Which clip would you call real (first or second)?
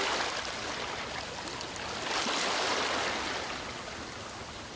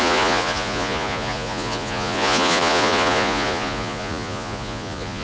first